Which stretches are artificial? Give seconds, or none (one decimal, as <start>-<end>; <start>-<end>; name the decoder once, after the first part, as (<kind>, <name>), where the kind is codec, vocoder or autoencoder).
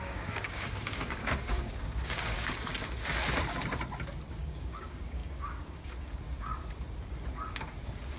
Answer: 0.0-2.7 (codec, DAC); 4.3-6.5